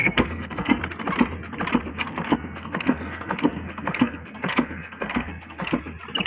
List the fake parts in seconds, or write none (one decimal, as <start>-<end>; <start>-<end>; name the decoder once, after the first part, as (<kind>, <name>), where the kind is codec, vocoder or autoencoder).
0.0-0.8 (codec, SNAC); 1.9-5.7